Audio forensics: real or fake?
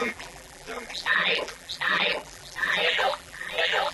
fake